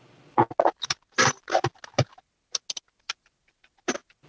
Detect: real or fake real